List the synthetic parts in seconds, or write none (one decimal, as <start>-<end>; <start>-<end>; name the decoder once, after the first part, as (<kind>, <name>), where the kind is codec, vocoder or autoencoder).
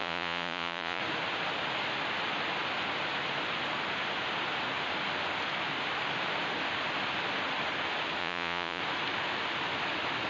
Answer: 0.0-1.0 (vocoder, Vocos); 8.2-8.8